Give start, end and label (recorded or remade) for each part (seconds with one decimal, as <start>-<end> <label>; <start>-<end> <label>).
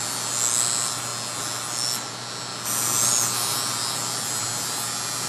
0.0-5.3 recorded